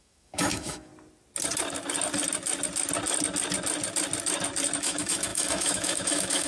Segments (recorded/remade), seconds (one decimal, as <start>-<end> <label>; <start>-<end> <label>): 0.0-0.9 remade; 0.9-4.8 recorded; 4.8-6.5 remade